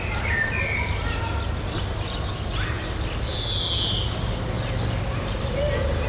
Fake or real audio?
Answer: real